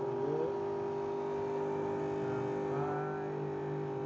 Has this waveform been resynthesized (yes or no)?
no